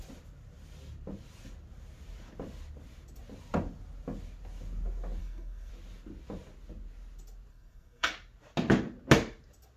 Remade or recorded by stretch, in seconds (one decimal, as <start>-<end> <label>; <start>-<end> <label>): 0.0-5.2 recorded; 5.2-5.7 remade; 5.7-7.5 recorded; 7.5-8.1 remade; 8.1-9.8 recorded